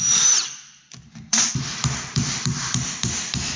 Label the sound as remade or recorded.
remade